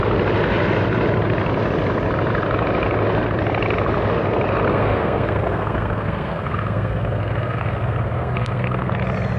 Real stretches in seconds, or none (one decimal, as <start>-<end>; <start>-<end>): 0.0-4.7; 8.9-9.4